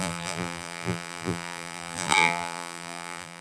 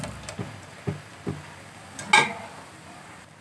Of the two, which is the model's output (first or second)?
first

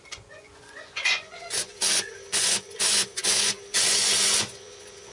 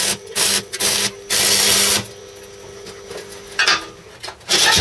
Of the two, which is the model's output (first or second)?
first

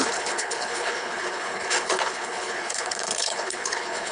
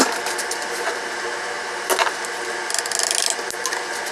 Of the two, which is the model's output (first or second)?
first